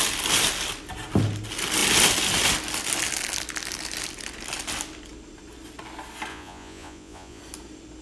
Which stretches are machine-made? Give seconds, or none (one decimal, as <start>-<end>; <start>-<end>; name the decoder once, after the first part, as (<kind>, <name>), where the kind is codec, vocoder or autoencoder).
6.3-7.4 (vocoder, Vocos)